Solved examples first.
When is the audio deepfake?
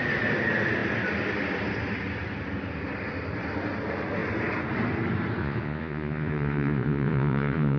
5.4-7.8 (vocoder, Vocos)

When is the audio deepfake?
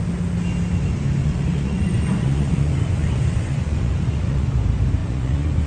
1.2-4.6 (vocoder, Vocos); 5.0-5.7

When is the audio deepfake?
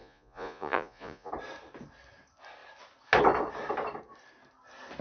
0.0-1.3 (vocoder, Vocos)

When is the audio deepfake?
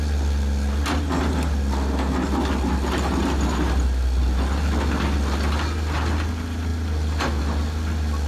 none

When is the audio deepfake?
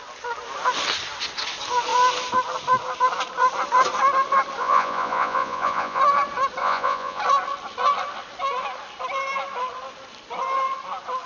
4.6-6.0 (vocoder, Vocos); 6.6-7.2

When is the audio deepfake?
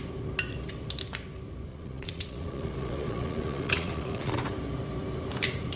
1.7-4.4 (vocoder, Vocos)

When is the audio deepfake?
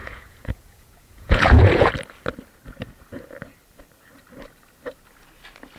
0.0-1.9 (vocoder, Vocos)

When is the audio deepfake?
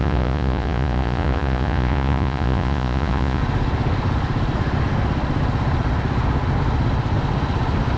0.0-3.4 (vocoder, Vocos)